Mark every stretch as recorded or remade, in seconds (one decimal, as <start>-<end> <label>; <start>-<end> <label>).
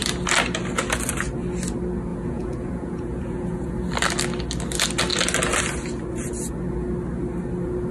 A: 0.0-2.1 recorded; 2.1-3.7 remade; 3.7-7.9 recorded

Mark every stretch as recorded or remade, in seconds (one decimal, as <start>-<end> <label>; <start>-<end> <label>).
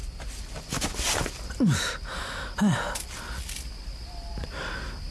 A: 0.0-5.1 recorded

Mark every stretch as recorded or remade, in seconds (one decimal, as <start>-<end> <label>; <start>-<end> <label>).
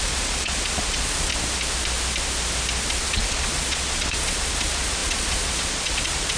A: 0.0-1.3 remade; 1.3-2.9 recorded; 2.9-6.4 remade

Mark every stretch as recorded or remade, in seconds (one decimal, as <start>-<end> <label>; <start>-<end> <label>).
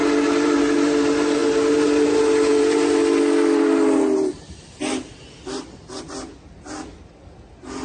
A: 0.0-7.8 recorded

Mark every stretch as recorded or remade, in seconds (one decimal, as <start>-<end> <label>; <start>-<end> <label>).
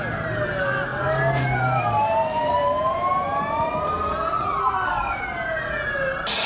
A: 0.0-4.6 recorded; 4.6-5.2 remade; 5.2-6.5 recorded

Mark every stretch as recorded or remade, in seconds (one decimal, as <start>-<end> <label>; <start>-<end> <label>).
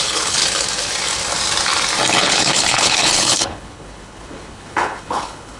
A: 0.0-0.4 remade; 0.4-2.2 recorded; 2.2-5.6 remade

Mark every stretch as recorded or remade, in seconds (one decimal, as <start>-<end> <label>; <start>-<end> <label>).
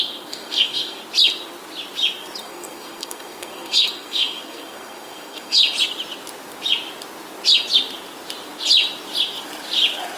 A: 0.0-1.0 remade; 1.0-2.4 recorded; 2.4-5.6 remade; 5.6-10.2 recorded